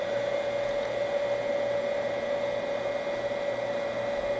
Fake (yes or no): no